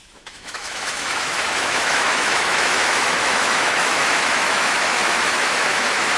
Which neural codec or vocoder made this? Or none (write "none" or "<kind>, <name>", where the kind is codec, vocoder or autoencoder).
autoencoder, DAC-VAE